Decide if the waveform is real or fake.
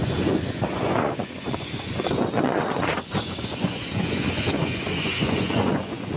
fake